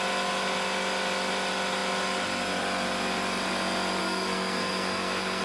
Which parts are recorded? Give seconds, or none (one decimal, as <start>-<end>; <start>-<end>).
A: 0.0-4.0